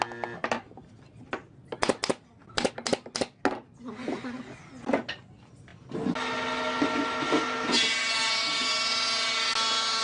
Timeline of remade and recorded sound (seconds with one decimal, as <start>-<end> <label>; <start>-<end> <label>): 0.0-10.0 recorded